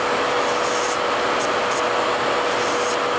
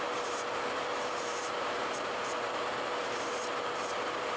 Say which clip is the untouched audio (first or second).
first